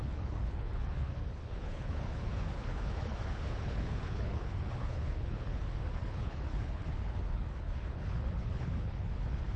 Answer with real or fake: fake